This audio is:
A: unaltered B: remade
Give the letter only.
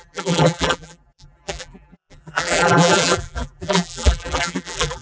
B